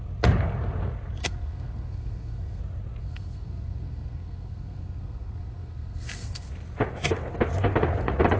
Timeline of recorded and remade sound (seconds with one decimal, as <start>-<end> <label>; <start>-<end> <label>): 0.0-1.2 recorded; 1.2-2.6 remade; 2.6-3.0 recorded; 3.0-6.5 remade; 6.5-8.4 recorded